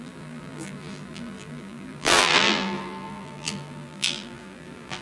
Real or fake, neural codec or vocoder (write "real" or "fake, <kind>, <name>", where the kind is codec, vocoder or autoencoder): fake, vocoder, BigVGAN v2